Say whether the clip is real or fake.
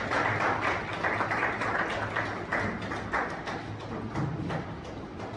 real